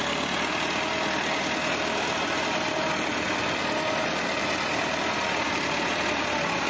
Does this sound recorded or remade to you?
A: recorded